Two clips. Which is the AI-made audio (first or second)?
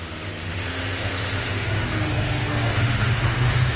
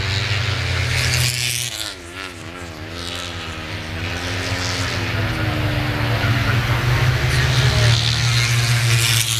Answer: first